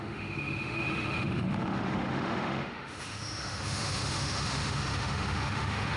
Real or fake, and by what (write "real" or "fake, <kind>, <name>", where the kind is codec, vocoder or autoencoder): fake, autoencoder, DAC-VAE